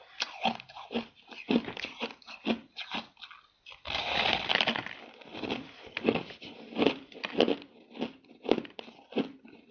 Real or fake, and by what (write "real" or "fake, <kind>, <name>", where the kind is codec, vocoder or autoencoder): real